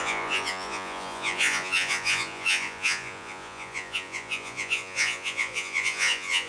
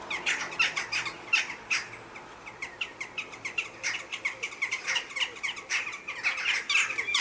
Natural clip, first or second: second